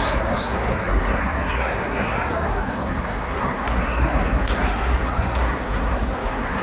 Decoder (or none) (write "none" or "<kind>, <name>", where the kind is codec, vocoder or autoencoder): codec, SNAC